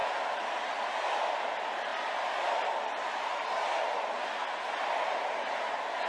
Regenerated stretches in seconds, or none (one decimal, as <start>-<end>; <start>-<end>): none